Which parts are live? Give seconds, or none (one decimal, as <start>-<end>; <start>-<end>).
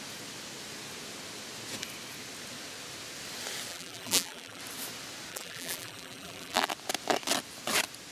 0.0-3.7; 4.6-5.3; 6.7-8.1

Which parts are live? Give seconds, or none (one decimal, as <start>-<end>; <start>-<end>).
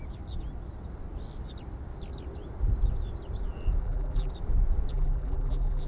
0.0-3.8; 4.3-4.9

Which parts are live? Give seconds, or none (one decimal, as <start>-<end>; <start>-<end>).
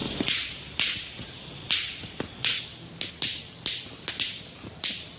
0.0-5.2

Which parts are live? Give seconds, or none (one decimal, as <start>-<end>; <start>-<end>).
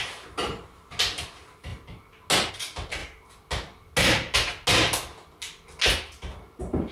1.7-2.5; 3.0-5.9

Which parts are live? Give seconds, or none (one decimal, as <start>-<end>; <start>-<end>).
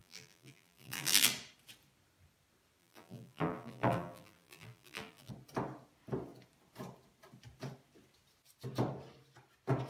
1.3-2.8; 5.3-9.9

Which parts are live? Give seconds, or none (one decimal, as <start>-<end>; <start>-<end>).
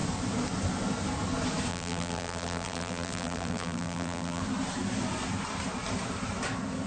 0.0-1.7; 4.4-6.9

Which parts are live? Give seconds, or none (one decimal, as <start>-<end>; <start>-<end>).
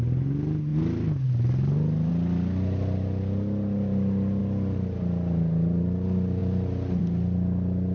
0.0-4.4; 5.0-7.9